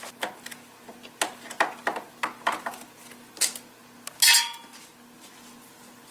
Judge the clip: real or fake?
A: real